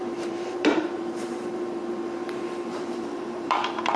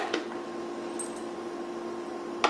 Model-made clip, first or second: first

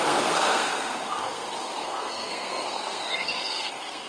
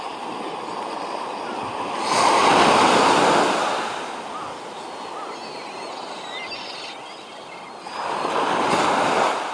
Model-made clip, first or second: first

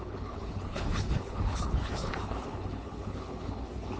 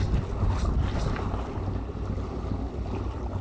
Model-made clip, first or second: first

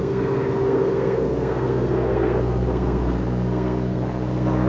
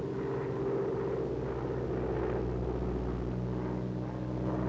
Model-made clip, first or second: first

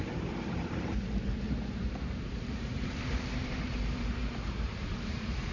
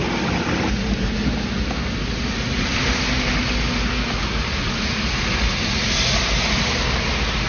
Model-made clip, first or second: first